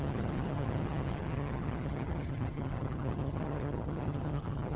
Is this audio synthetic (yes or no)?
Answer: yes